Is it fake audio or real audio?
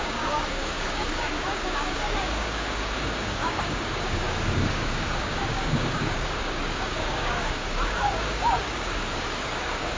fake